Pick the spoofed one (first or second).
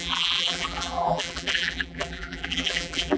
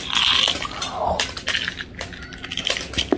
first